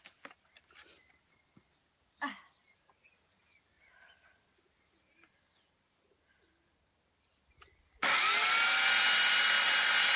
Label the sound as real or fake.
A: real